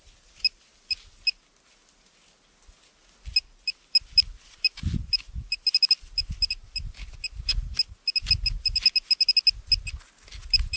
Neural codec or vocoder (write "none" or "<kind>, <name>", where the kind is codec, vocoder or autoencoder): none